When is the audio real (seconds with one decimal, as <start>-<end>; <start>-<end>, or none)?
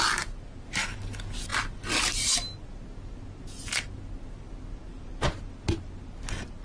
0.0-6.6